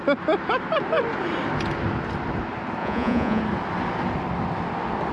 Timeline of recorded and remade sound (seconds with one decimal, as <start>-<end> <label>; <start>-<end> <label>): 0.0-2.8 recorded; 2.8-3.4 remade; 3.4-5.1 recorded